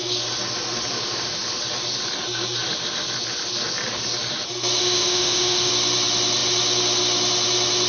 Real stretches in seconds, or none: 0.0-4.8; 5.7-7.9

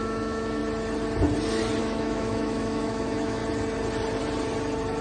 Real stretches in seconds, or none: 0.6-1.8; 3.4-5.0

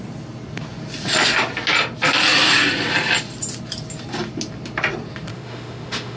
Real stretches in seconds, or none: 0.0-5.3

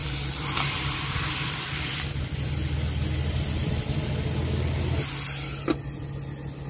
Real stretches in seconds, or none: 2.5-3.6; 4.1-6.7

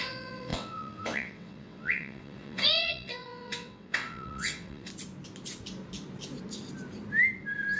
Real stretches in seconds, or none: 4.9-7.8

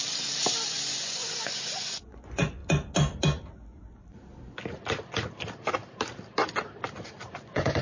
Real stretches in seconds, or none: 0.0-0.7; 2.6-7.3

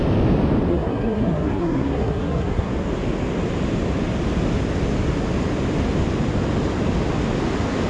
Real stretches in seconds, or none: 0.0-0.7; 2.7-7.9

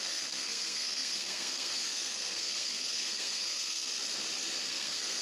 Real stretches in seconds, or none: 3.9-4.6